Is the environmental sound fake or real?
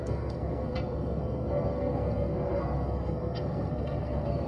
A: fake